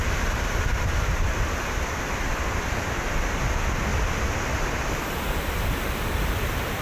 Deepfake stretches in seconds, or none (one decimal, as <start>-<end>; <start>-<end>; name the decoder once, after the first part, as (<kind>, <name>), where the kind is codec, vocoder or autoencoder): 0.0-2.3 (vocoder, BigVGAN v2); 3.9-5.0